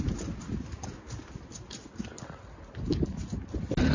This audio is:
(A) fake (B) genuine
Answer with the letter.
B